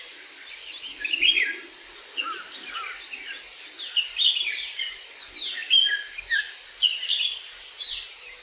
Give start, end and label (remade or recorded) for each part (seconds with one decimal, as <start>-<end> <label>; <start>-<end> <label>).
0.0-8.4 recorded